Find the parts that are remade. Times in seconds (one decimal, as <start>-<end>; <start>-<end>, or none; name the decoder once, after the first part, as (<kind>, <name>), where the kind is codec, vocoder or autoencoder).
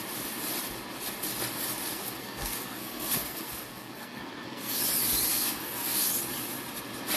1.9-4.8 (codec, SNAC); 5.3-6.1